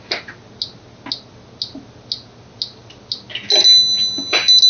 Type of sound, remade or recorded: recorded